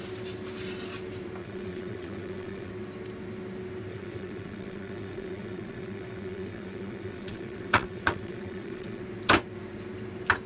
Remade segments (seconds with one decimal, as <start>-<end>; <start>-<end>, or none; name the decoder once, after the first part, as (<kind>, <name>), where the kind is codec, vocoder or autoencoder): 1.4-2.7 (vocoder, WaveNeXt); 3.9-9.0